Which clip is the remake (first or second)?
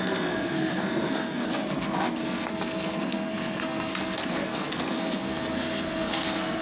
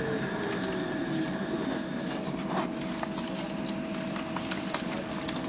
first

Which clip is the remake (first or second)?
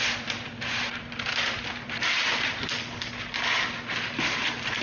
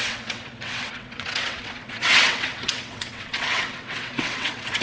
second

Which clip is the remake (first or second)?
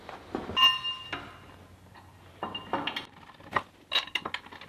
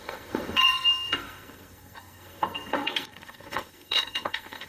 second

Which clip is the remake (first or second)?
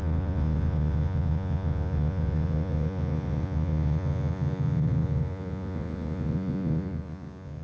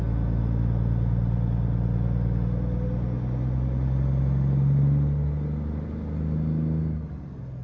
first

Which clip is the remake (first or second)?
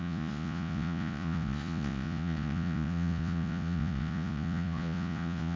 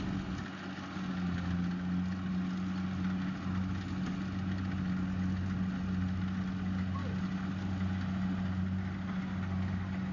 first